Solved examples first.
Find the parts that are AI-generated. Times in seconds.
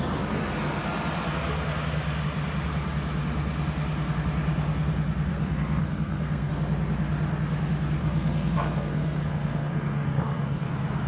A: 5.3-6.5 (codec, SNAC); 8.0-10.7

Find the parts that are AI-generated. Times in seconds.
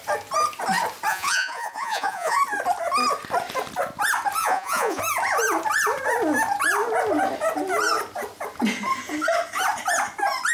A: 1.1-2.4 (vocoder, Vocos); 4.4-5.0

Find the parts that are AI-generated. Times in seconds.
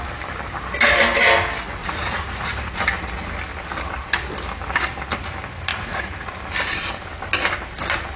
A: 1.8-2.7 (vocoder, Vocos); 5.7-6.4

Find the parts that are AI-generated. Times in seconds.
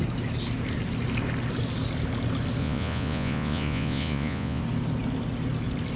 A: 2.6-4.6 (vocoder, Vocos)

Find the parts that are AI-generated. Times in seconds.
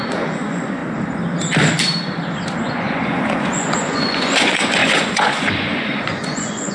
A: 0.0-0.8 (vocoder, Vocos); 2.7-6.7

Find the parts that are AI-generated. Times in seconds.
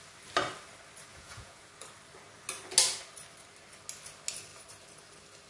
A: 1.1-1.7 (vocoder, Vocos)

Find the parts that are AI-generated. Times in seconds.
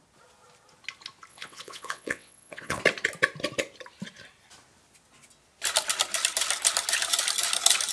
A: 1.3-2.8 (vocoder, WaveNeXt)